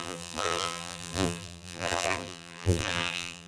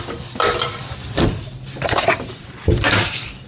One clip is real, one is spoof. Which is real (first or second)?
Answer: second